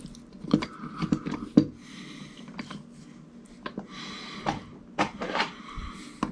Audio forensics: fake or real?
real